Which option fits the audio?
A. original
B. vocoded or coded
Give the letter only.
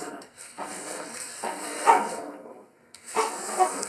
B